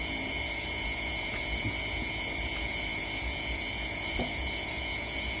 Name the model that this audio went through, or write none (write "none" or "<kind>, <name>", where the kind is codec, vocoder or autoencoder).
vocoder, Vocos